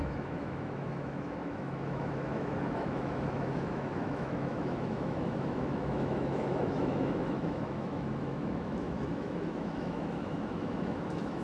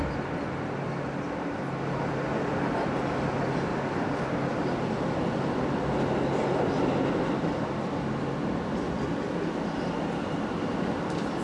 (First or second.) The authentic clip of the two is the second